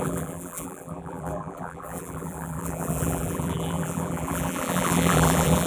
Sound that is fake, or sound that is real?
fake